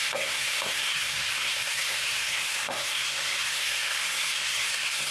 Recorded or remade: remade